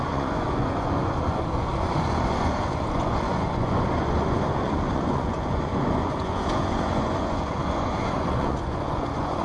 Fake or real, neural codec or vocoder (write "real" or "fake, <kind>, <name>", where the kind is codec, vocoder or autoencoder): fake, vocoder, Vocos